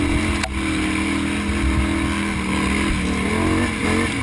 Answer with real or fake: real